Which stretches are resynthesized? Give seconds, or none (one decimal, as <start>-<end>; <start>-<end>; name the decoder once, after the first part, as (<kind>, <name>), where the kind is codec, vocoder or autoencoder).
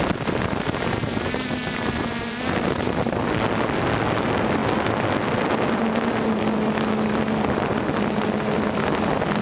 none